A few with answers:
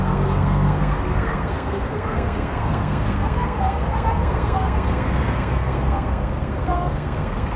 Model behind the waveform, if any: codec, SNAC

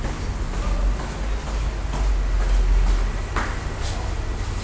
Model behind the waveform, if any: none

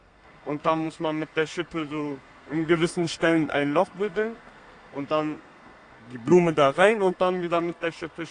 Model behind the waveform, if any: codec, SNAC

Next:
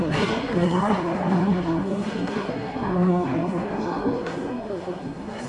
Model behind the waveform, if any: codec, SNAC